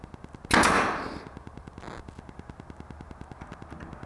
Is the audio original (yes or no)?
yes